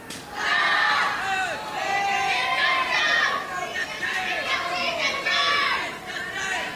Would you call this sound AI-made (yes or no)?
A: no